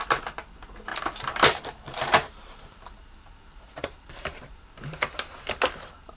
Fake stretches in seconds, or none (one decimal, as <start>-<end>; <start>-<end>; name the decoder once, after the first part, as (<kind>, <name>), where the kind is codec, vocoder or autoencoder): 0.9-4.4 (vocoder, BigVGAN v2)